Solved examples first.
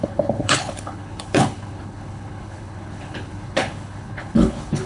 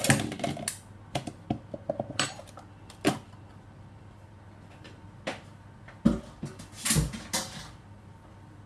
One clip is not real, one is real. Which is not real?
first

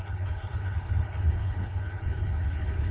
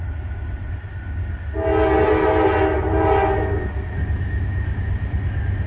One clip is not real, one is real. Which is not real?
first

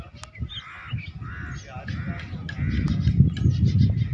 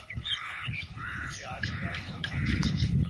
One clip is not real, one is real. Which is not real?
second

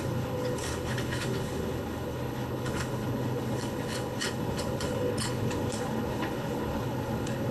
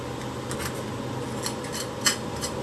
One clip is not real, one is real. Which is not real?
first